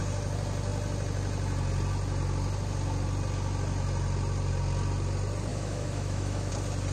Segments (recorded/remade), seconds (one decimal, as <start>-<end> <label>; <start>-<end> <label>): 0.0-5.5 recorded; 5.5-6.5 remade; 6.5-6.9 recorded